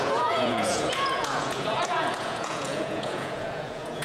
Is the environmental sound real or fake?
fake